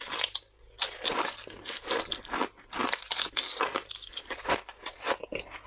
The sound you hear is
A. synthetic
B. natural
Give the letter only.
B